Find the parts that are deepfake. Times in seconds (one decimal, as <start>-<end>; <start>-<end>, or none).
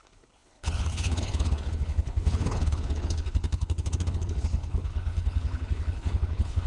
0.0-6.7